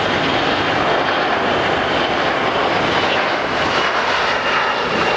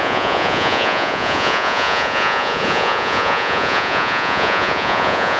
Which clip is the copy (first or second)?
second